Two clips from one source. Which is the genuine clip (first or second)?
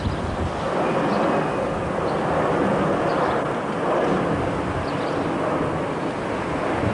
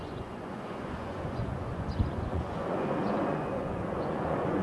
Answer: first